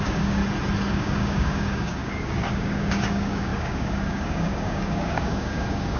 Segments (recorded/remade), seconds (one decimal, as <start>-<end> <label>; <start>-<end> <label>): 0.0-0.4 remade; 0.4-0.9 recorded; 0.9-6.0 remade